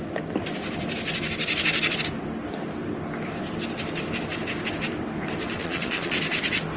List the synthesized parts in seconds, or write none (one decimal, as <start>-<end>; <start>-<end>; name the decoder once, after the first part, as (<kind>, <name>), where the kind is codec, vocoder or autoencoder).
5.6-6.2 (vocoder, Vocos)